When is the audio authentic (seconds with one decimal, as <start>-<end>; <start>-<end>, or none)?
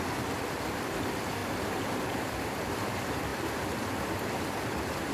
0.0-1.4; 2.6-5.1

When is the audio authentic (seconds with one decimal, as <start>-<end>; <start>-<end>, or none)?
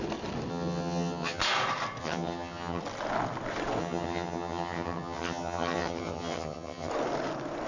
0.0-0.5; 1.4-2.0; 2.8-3.8; 6.9-7.7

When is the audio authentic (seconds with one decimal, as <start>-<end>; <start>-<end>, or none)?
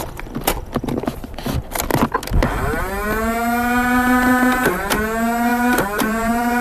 0.0-5.5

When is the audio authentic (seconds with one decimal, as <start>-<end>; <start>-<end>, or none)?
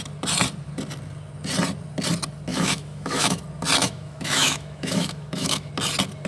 0.0-2.5; 3.4-3.8; 5.7-6.3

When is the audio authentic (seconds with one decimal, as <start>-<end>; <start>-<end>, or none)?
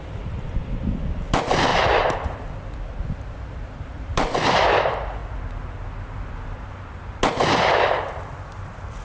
5.2-6.1; 7.0-8.3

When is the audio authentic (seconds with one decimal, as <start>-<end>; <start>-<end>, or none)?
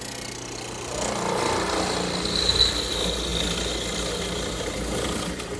0.0-5.6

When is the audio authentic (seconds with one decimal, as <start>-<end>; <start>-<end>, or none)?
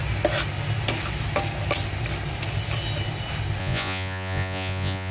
0.0-3.6